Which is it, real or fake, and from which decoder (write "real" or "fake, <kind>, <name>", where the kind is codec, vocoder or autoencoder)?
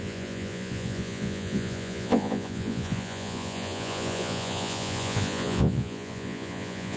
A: fake, vocoder, Vocos